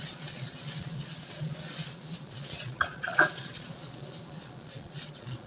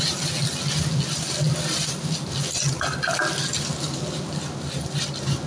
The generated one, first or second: first